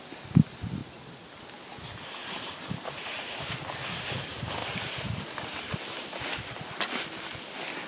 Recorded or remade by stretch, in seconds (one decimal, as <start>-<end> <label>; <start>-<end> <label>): 0.0-2.2 recorded; 2.2-3.7 remade; 3.7-4.6 recorded; 4.6-6.9 remade; 6.9-7.9 recorded